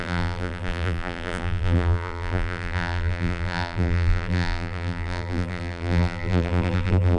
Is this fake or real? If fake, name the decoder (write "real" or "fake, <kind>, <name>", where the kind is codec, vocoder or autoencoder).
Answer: fake, vocoder, BigVGAN v2